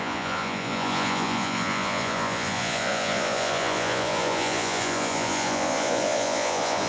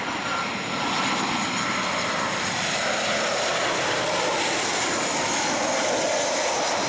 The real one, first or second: second